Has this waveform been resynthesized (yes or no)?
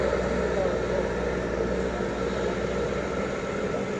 no